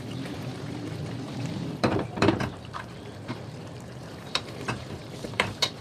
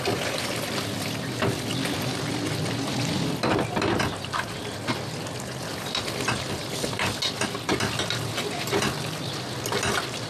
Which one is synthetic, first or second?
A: first